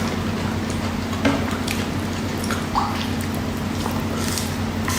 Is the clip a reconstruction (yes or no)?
no